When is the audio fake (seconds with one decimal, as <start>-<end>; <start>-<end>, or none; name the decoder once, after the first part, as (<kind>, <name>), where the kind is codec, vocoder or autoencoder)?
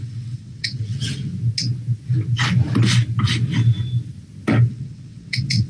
0.0-1.3 (vocoder, WaveNeXt); 4.7-5.7